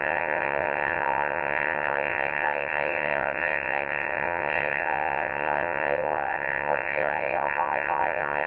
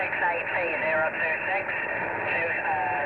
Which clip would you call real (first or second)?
second